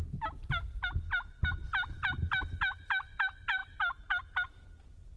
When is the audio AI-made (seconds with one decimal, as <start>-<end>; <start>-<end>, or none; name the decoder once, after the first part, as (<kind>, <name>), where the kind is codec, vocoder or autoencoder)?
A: none